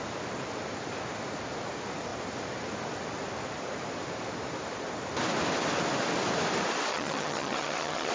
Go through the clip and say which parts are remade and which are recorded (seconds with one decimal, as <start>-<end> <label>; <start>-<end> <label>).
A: 0.0-6.9 recorded; 6.9-8.1 remade